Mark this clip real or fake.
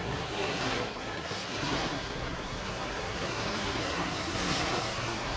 fake